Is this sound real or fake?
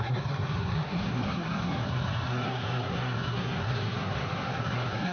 fake